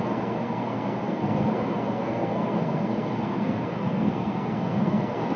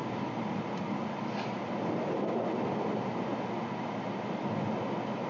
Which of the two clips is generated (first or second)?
first